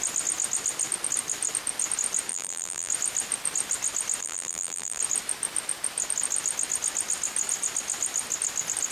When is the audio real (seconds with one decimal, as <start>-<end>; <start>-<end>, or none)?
0.0-2.3; 2.9-4.2; 5.0-8.9